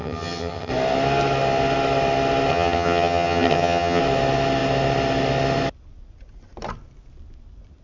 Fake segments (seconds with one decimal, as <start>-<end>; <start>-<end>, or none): 0.0-0.7; 2.5-4.0